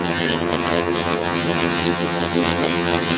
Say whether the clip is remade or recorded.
remade